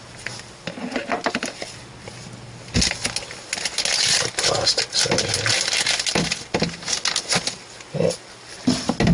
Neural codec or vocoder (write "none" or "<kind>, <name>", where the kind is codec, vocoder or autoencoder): none